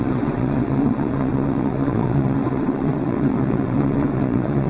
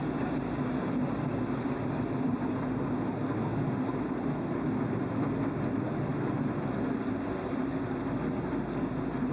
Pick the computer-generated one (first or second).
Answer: first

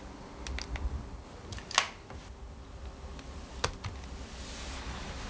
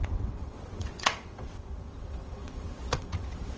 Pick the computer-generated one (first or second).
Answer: second